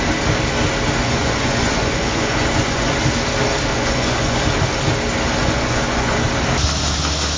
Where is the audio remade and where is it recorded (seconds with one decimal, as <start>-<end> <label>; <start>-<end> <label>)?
0.0-1.0 recorded; 1.0-2.9 remade; 2.9-3.7 recorded; 3.7-4.4 remade; 4.4-5.4 recorded; 5.4-6.3 remade; 6.3-7.4 recorded